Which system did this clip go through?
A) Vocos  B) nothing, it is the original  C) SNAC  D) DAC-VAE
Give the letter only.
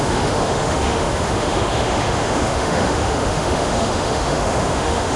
D